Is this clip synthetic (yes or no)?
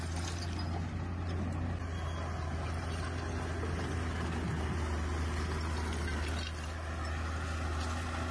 no